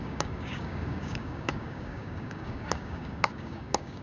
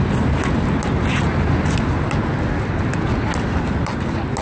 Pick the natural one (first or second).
second